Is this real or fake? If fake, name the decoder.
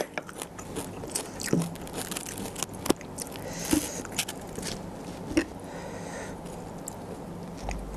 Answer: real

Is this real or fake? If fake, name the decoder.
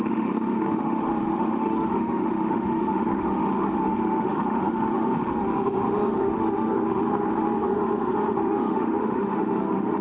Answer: fake, autoencoder, DAC-VAE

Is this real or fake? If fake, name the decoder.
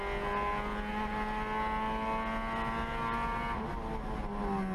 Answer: real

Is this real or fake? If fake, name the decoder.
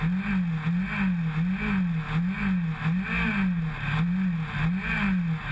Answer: real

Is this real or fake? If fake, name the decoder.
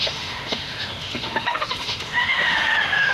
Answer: fake, autoencoder, DAC-VAE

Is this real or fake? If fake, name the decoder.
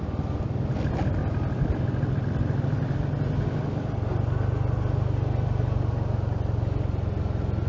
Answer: real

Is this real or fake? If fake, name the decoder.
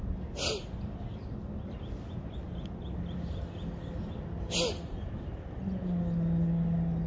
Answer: real